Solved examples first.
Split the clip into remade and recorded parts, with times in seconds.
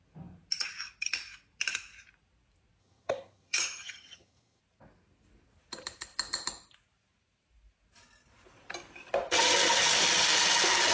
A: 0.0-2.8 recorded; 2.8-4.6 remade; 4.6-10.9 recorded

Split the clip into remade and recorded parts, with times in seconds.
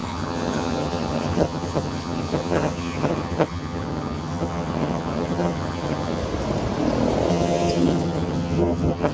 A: 0.0-6.2 remade; 6.2-7.3 recorded; 7.3-9.1 remade